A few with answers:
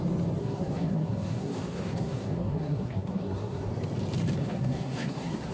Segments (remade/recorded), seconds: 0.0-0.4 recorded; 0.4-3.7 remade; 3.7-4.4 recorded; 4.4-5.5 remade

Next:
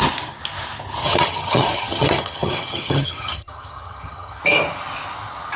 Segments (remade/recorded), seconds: 0.0-1.0 recorded; 1.0-4.4 remade; 4.4-5.6 recorded

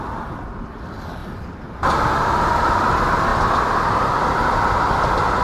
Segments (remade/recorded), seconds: 0.0-5.4 recorded

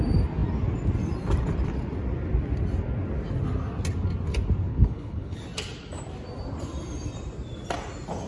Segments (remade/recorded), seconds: 0.0-4.7 recorded; 4.7-5.4 remade; 5.4-8.3 recorded